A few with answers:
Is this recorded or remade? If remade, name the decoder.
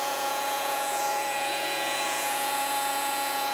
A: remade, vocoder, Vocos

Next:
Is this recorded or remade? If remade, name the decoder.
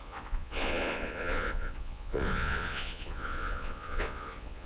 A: remade, vocoder, Vocos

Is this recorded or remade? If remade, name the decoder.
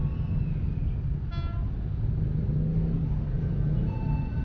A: recorded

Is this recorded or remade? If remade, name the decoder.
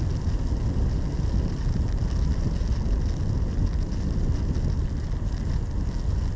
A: recorded